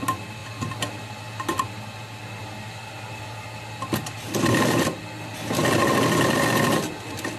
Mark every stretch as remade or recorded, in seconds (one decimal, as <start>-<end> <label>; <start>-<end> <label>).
0.0-7.4 recorded

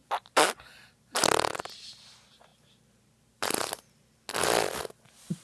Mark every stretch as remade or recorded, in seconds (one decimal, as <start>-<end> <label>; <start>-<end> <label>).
0.0-5.4 recorded